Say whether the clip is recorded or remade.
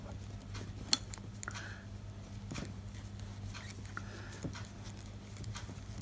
recorded